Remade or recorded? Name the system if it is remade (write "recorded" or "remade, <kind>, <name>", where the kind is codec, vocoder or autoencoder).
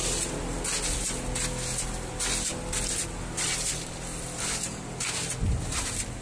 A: recorded